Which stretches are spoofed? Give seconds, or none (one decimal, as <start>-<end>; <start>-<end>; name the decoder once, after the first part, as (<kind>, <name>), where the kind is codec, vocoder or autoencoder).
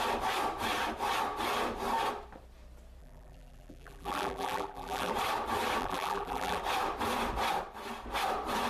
3.0-5.1 (vocoder, BigVGAN v2); 5.8-6.6